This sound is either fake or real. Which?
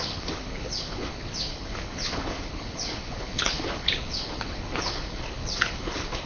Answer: fake